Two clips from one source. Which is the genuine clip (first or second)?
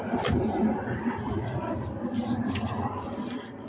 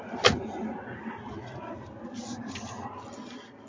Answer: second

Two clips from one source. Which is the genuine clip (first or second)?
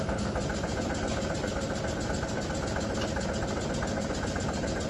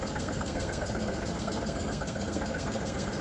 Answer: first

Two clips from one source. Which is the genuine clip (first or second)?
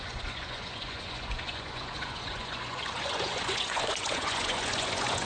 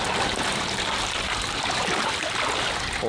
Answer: second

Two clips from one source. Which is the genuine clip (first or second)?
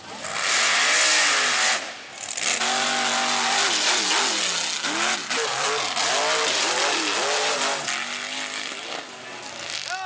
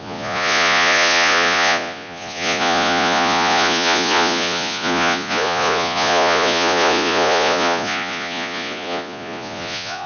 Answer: first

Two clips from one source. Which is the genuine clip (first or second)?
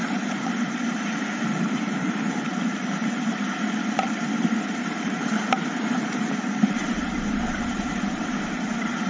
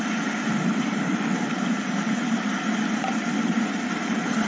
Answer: second